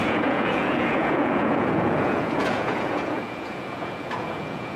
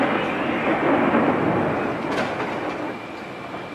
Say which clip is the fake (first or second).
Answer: first